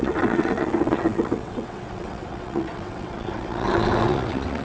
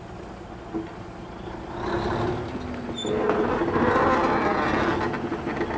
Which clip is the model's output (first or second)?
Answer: first